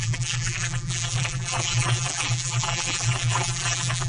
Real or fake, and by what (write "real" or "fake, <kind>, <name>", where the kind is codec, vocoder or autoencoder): fake, vocoder, BigVGAN v2